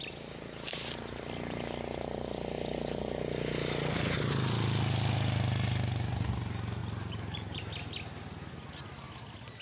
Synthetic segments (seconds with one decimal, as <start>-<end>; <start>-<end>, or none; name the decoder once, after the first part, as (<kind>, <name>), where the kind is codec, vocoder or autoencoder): 6.8-7.6 (vocoder, BigVGAN v2)